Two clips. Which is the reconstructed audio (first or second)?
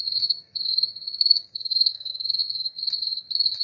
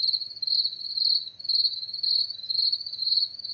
first